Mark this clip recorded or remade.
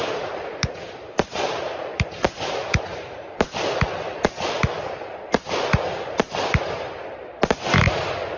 recorded